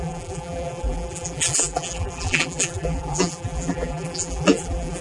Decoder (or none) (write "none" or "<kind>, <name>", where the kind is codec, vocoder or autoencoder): vocoder, BigVGAN v2